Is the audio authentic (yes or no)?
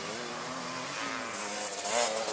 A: yes